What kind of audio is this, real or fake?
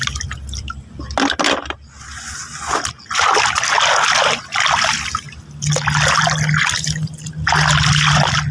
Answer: real